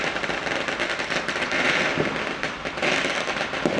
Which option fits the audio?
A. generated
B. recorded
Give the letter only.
B